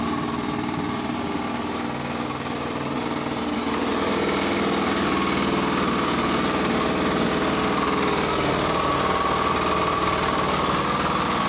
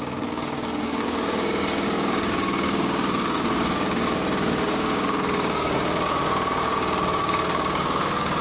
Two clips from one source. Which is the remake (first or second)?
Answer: second